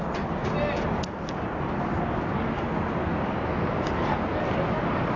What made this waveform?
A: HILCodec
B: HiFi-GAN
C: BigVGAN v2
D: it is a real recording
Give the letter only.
D